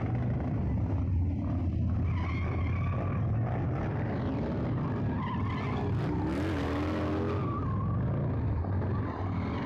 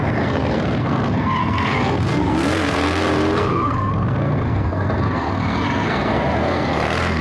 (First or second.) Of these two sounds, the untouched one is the first